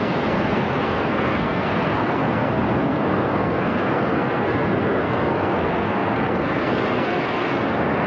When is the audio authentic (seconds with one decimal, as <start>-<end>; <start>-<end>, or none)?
none